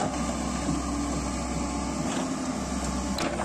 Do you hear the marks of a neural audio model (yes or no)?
no